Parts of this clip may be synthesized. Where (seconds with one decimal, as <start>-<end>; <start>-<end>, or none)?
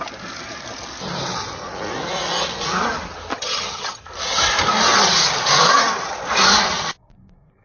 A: 3.3-4.0